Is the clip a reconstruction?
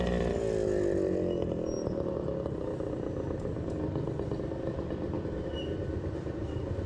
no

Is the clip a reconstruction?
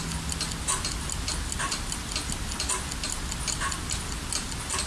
no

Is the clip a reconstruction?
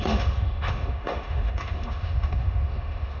yes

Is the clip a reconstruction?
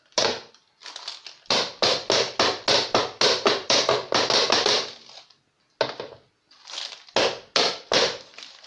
no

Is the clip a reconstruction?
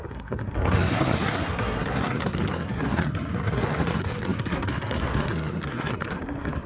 yes